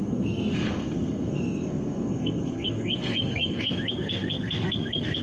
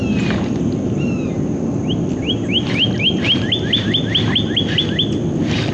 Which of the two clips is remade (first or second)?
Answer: first